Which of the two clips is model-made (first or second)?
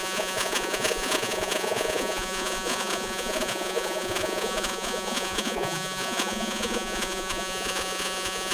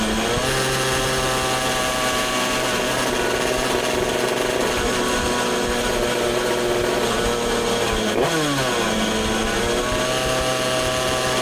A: first